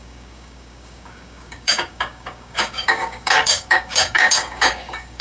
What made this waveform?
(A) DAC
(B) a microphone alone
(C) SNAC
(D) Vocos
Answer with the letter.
A